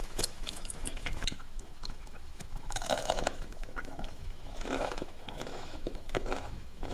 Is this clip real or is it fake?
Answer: fake